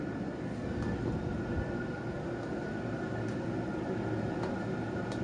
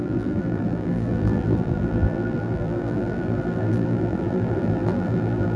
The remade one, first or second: second